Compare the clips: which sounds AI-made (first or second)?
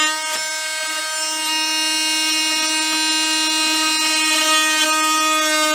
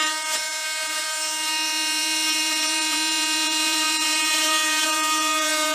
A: second